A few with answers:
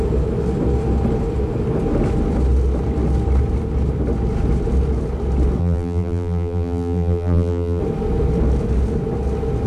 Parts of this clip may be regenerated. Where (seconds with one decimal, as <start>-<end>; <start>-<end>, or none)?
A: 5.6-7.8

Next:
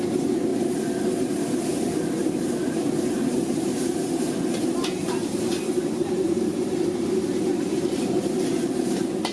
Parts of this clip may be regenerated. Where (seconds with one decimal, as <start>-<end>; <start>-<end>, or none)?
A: 2.2-6.7

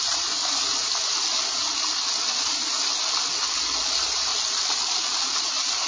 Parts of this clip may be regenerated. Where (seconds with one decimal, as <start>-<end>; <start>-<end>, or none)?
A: 0.0-0.4; 3.9-4.3; 5.4-5.9